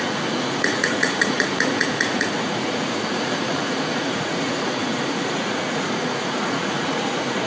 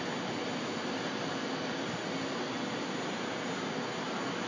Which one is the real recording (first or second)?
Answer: second